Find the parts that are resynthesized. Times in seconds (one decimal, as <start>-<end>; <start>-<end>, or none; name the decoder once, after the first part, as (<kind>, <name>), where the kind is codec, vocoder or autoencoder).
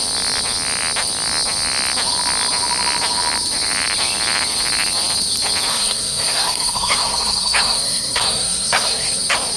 5.7-9.2 (codec, SNAC)